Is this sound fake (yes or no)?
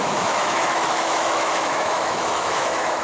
yes